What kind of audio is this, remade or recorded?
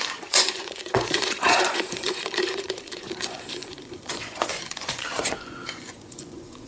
remade